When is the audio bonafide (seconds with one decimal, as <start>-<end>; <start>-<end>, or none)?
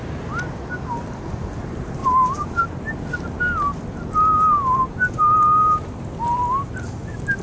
0.0-2.0; 2.6-7.4